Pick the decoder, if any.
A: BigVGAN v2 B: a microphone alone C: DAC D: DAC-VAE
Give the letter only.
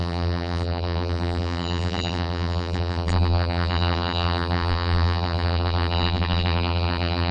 A